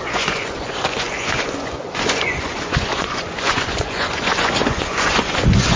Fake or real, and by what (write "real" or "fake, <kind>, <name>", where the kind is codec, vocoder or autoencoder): fake, vocoder, Vocos